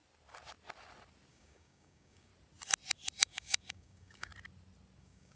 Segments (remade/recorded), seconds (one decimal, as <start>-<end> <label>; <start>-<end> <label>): 0.0-1.3 recorded; 1.3-2.3 remade; 2.3-3.2 recorded; 3.2-4.3 remade; 4.3-5.0 recorded; 5.0-5.4 remade